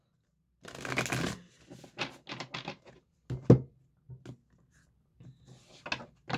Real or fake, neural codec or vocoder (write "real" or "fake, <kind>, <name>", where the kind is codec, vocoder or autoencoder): real